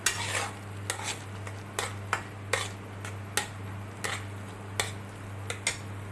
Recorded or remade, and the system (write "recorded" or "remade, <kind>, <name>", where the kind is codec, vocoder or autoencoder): recorded